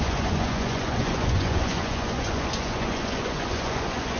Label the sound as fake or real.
fake